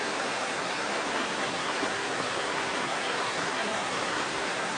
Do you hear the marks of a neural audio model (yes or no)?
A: yes